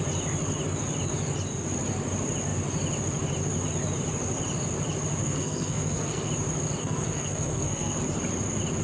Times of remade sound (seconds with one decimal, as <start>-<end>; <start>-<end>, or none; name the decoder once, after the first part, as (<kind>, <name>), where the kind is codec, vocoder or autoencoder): 5.2-6.3 (codec, SNAC); 6.8-8.0